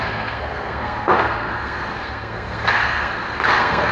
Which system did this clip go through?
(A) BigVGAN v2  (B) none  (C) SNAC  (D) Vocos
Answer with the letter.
C